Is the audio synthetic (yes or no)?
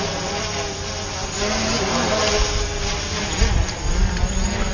no